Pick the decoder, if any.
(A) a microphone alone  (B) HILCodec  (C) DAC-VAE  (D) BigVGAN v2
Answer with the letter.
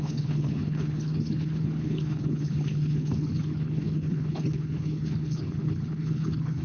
B